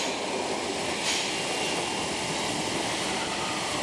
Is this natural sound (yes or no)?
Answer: yes